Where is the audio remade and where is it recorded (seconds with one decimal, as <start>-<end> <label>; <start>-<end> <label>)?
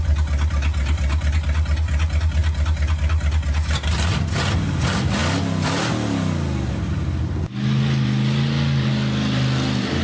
0.0-10.0 recorded